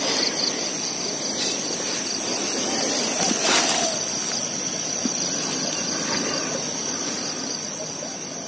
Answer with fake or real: real